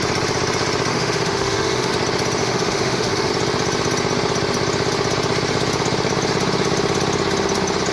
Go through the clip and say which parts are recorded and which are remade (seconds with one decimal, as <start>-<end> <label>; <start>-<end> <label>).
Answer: 0.0-0.9 recorded; 0.9-1.9 remade; 1.9-2.4 recorded; 2.4-3.3 remade; 3.3-7.9 recorded